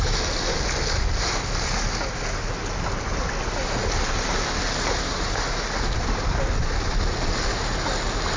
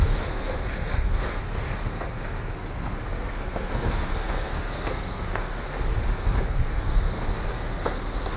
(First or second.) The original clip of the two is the first